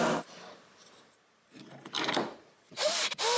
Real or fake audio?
fake